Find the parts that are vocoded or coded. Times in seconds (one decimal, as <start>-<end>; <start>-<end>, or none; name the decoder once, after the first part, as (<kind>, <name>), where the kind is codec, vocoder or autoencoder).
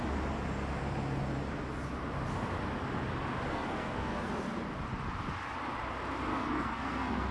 3.5-4.3 (codec, SNAC); 6.3-7.3